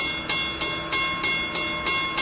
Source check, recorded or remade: recorded